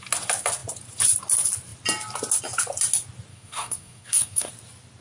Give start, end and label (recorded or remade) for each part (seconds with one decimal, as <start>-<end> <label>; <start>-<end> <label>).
0.0-3.3 recorded; 3.3-4.5 remade; 4.5-5.0 recorded